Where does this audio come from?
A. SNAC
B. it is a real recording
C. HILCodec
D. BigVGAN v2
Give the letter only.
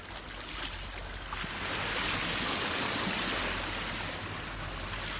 B